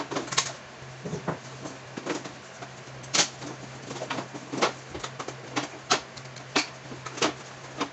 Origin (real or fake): real